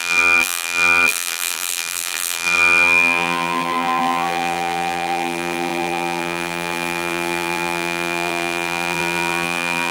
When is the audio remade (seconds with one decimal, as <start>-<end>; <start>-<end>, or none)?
0.0-9.9